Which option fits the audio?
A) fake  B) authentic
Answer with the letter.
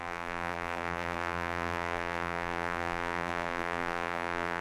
A